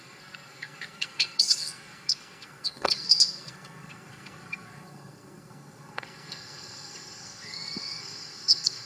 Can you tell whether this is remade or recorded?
remade